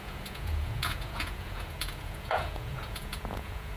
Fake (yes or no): yes